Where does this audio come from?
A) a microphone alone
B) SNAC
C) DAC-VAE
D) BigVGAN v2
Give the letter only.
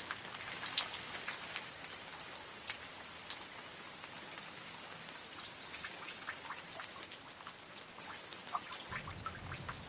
A